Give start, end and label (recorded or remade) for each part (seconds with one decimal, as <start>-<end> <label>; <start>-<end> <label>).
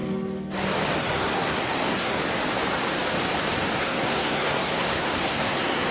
0.0-1.0 recorded; 1.0-2.2 remade; 2.2-3.8 recorded; 3.8-5.9 remade